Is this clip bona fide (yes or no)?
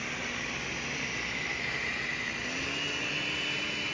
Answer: yes